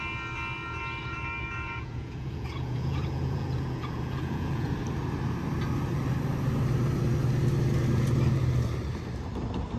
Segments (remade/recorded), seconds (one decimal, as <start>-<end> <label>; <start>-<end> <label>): 0.0-1.0 recorded; 1.0-4.7 remade; 4.7-9.8 recorded